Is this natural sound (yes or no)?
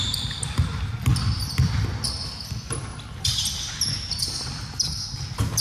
yes